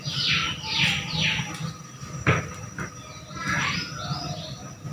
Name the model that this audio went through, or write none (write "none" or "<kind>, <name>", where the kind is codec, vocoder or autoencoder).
none